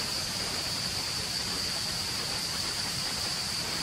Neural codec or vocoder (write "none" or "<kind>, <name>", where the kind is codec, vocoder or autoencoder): vocoder, BigVGAN v2